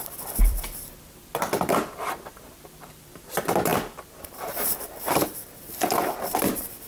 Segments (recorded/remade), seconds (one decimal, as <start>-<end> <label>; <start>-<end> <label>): 0.0-6.9 remade